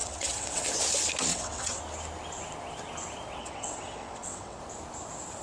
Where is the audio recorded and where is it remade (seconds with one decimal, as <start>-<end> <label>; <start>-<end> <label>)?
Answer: 0.0-0.7 remade; 0.7-1.3 recorded; 1.3-1.8 remade; 1.8-3.4 recorded; 3.4-4.6 remade; 4.6-5.4 recorded